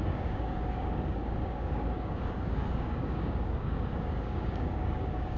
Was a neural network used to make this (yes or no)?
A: yes